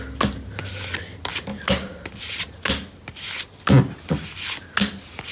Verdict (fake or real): real